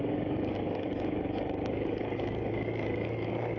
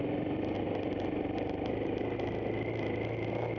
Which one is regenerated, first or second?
first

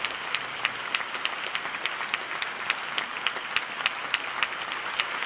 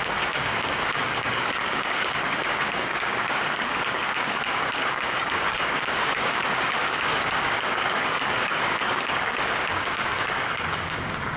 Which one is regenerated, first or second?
second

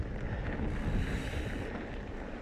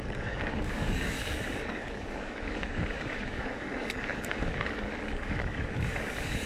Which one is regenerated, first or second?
second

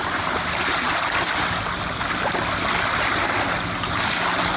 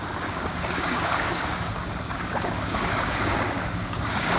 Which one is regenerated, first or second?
second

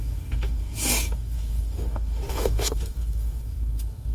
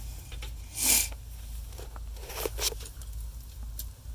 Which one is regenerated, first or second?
first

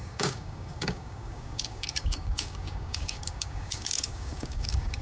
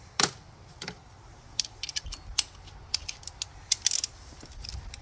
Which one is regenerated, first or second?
first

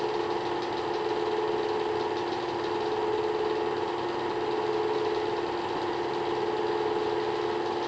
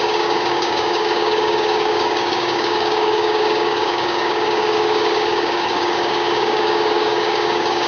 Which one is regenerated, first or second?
second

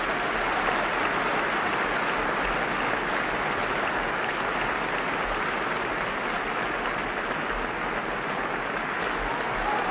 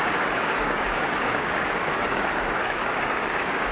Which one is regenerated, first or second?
second